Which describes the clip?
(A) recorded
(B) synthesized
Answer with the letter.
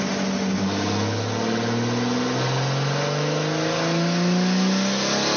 A